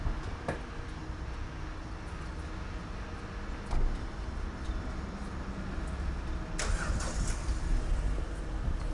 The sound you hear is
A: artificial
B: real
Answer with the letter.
B